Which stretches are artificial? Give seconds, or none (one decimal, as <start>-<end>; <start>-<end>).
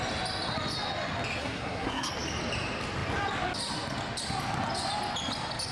1.4-2.1